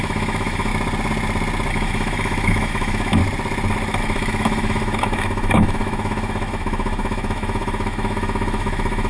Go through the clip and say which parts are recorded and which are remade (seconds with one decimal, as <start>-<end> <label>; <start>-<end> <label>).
0.0-0.7 remade; 0.7-1.7 recorded; 1.7-3.2 remade; 3.2-4.0 recorded; 4.0-9.1 remade